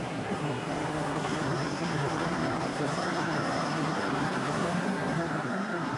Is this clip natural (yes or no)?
no